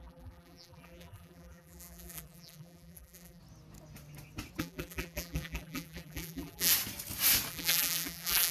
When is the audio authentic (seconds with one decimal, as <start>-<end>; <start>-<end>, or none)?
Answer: 3.4-4.6; 6.7-7.5